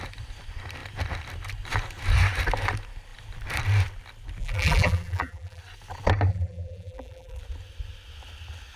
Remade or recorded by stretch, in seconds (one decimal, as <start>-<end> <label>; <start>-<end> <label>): 0.0-4.4 recorded; 4.4-5.6 remade; 5.6-6.3 recorded; 6.3-7.4 remade; 7.4-8.8 recorded